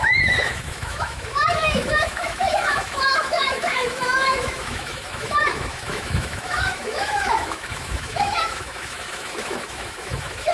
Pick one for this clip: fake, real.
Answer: fake